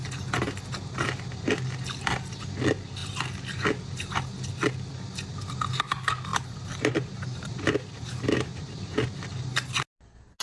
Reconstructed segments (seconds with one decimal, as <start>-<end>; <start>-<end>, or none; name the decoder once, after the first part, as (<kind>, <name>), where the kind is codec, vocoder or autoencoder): 6.3-9.8 (vocoder, BigVGAN v2)